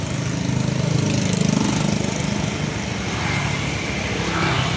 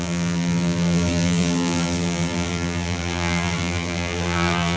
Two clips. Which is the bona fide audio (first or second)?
first